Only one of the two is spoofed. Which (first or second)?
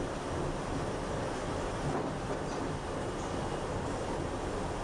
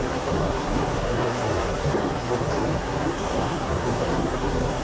second